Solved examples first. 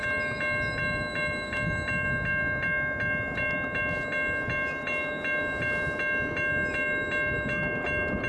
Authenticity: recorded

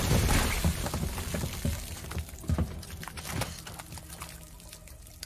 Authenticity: remade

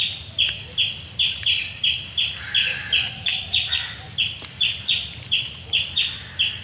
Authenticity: recorded